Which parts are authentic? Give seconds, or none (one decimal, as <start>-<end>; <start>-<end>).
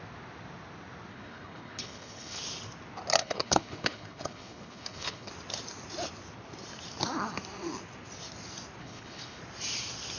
0.0-1.1; 2.4-3.2; 5.3-8.8; 9.4-10.2